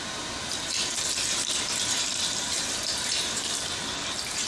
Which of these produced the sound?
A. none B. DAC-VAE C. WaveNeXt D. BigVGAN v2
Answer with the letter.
D